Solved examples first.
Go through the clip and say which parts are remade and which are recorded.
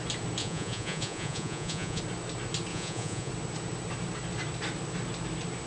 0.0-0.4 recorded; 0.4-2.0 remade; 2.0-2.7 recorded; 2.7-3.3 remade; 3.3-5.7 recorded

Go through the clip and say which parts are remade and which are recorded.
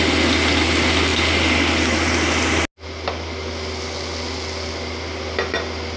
0.0-6.0 recorded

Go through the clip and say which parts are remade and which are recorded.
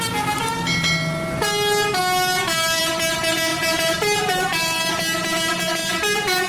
0.0-3.5 recorded; 3.5-4.9 remade; 4.9-5.8 recorded; 5.8-6.5 remade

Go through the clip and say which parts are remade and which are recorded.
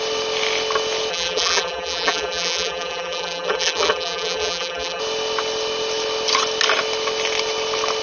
0.0-1.1 recorded; 1.1-5.0 remade; 5.0-8.0 recorded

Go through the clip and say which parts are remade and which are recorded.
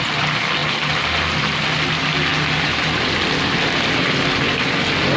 0.0-5.2 recorded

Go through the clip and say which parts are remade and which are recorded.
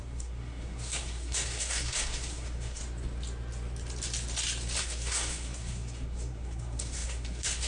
0.0-2.8 remade; 2.8-4.8 recorded; 4.8-7.7 remade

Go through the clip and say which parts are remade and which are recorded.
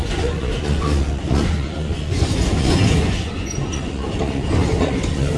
0.0-5.4 remade